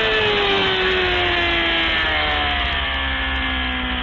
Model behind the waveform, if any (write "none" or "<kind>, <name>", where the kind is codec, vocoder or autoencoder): none